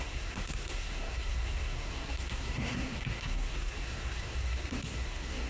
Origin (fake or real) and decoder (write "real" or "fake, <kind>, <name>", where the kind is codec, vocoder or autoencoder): fake, codec, SNAC